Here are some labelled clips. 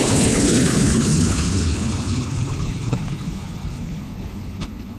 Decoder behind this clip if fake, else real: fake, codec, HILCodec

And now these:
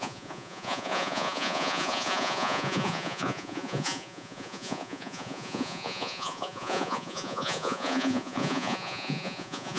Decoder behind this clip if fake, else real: fake, vocoder, Vocos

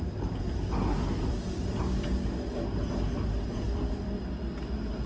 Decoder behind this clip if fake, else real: real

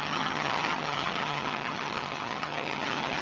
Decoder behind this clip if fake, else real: fake, vocoder, HiFi-GAN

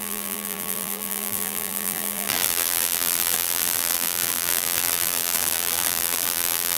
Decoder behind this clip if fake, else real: fake, vocoder, BigVGAN v2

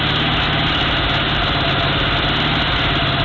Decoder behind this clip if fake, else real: real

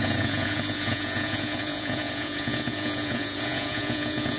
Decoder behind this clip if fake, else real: fake, vocoder, Vocos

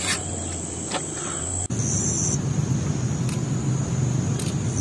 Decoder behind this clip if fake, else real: real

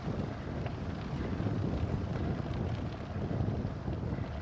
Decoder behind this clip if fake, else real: real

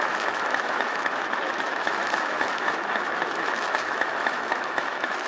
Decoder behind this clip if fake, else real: fake, autoencoder, DAC-VAE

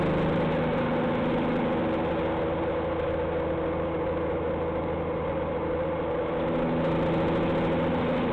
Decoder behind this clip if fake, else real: real